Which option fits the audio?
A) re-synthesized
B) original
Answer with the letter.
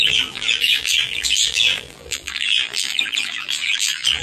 A